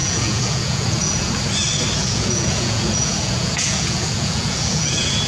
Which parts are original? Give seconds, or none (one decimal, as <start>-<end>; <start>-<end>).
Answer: 1.3-2.0